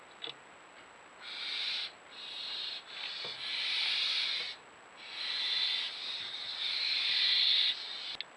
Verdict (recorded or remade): recorded